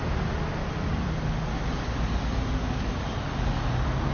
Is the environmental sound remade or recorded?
recorded